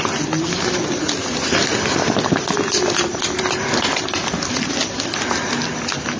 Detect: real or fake real